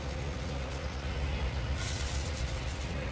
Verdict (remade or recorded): remade